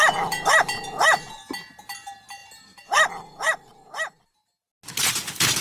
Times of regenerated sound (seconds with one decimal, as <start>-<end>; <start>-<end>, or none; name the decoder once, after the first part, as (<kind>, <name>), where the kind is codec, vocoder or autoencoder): none